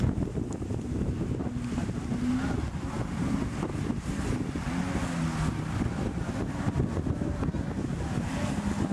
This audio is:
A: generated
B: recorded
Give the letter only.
B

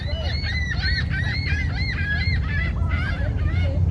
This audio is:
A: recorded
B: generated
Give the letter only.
A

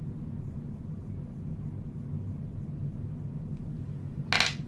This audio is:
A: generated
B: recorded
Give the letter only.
B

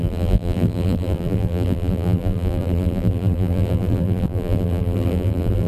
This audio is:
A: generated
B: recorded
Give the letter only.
A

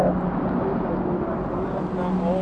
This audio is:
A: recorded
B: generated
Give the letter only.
A